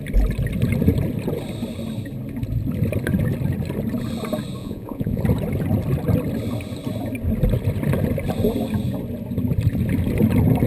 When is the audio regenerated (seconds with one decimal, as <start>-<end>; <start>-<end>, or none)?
4.6-5.2